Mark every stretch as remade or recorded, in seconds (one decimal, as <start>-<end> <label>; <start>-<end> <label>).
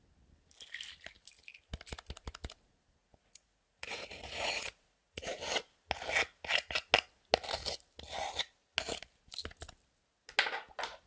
0.0-3.0 recorded; 3.0-5.4 remade; 5.4-11.1 recorded